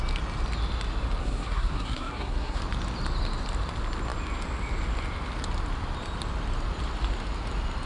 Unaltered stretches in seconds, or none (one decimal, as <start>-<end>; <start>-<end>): 0.0-1.2; 2.6-7.9